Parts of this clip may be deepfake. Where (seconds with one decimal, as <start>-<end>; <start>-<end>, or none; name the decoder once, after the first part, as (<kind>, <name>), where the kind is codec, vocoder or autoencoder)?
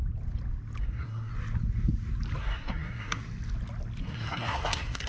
0.8-1.3 (codec, SNAC); 2.4-3.2; 4.0-5.1